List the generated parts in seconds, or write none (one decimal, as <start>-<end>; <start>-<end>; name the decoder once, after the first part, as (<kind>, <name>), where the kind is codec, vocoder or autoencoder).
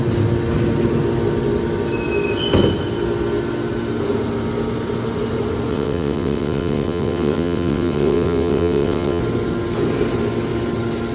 5.7-9.2 (vocoder, WaveNeXt)